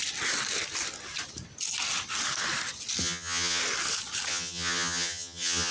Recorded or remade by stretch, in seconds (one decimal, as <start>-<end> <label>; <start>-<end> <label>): 0.0-3.0 recorded; 3.0-3.6 remade; 3.6-4.3 recorded; 4.3-5.7 remade